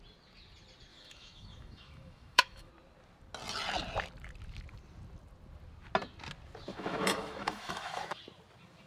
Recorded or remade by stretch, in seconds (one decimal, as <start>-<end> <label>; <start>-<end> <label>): 0.0-0.9 recorded; 0.9-2.7 remade; 2.7-6.7 recorded; 6.7-8.2 remade; 8.2-8.9 recorded